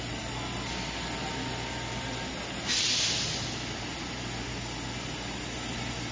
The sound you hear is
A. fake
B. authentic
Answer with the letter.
B